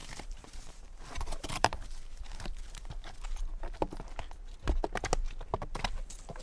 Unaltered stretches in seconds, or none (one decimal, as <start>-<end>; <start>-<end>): 3.4-6.4